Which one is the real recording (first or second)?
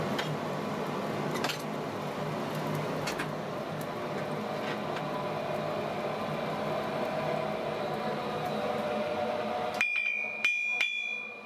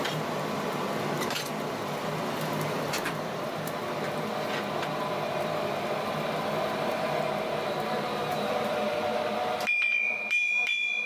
first